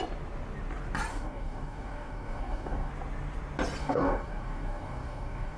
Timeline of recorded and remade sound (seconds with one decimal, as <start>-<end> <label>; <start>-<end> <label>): 0.0-1.1 recorded; 1.1-2.9 remade; 2.9-3.8 recorded; 3.8-5.6 remade